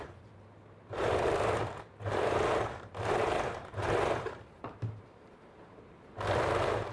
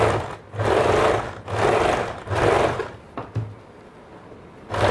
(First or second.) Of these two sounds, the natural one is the second